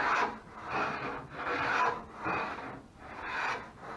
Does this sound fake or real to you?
real